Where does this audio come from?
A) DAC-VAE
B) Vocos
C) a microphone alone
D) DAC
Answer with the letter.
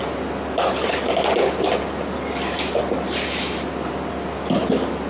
C